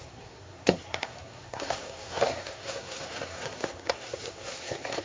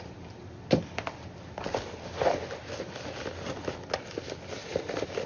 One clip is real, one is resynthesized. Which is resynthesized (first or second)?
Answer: first